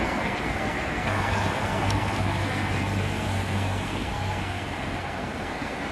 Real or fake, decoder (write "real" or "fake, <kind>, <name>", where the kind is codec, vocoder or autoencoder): fake, codec, SNAC